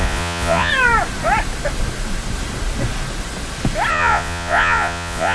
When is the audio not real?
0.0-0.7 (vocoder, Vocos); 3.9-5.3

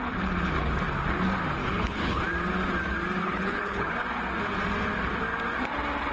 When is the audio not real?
1.6-2.2 (codec, HILCodec); 3.2-3.9

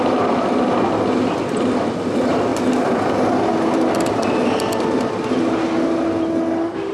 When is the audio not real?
none

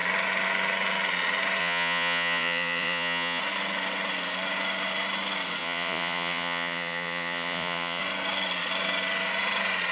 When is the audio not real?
1.6-3.4 (vocoder, Vocos); 5.6-8.0

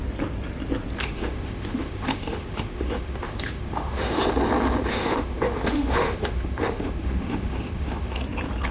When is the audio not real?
1.0-4.2 (autoencoder, DAC-VAE); 4.9-8.2

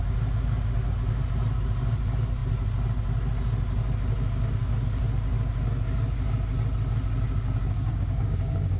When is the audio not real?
7.6-8.8 (codec, DAC)

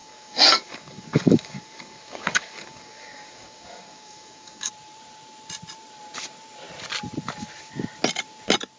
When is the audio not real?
0.0-4.7 (codec, DAC)

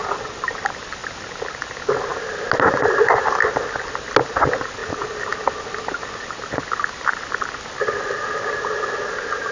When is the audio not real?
none